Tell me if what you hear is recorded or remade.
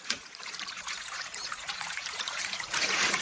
remade